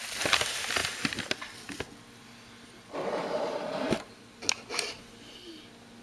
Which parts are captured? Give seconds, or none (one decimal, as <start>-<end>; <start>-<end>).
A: 0.0-0.8; 1.3-3.2; 4.1-6.0